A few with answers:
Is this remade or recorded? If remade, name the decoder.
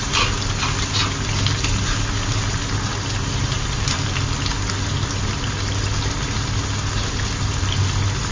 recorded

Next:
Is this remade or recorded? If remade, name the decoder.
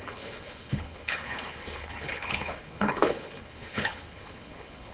remade, codec, HILCodec